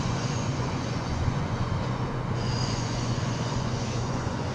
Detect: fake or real fake